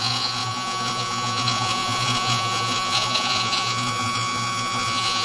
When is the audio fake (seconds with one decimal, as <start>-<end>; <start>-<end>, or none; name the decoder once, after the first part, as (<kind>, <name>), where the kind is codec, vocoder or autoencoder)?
0.0-5.2 (vocoder, Vocos)